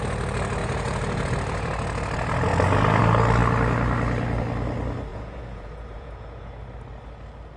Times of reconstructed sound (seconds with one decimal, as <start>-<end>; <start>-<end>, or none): 0.6-1.3; 5.1-6.5